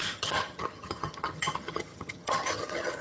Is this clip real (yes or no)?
no